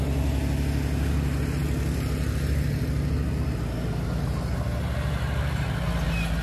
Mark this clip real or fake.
real